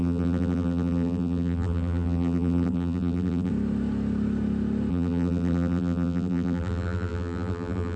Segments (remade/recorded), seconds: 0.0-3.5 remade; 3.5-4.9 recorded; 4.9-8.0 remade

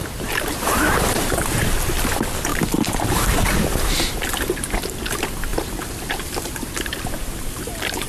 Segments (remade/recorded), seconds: 0.0-2.5 recorded; 2.5-3.7 remade; 3.7-5.5 recorded; 5.5-8.1 remade

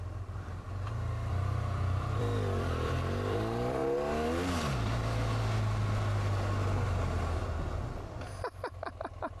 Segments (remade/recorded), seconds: 0.0-0.5 remade; 0.5-1.3 recorded; 1.3-3.8 remade; 3.8-9.0 recorded; 9.0-9.4 remade

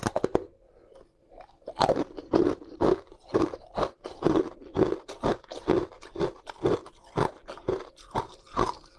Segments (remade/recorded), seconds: 0.0-1.1 recorded; 1.1-2.8 remade; 2.8-9.0 recorded

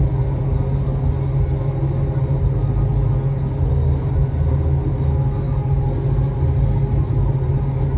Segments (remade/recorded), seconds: 0.0-8.0 recorded

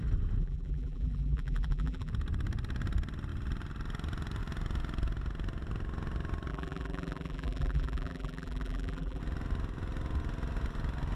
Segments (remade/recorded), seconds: 0.0-0.4 recorded; 0.4-2.1 remade; 2.1-6.5 recorded; 6.5-9.2 remade; 9.2-11.2 recorded